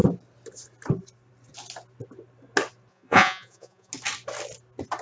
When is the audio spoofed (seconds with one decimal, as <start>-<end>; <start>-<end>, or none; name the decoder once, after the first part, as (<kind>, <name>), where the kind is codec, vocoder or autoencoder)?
2.9-3.9 (vocoder, Vocos)